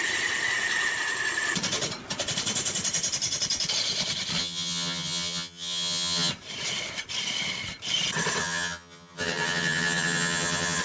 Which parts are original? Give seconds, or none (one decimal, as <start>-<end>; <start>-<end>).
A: 0.0-4.4; 6.3-8.4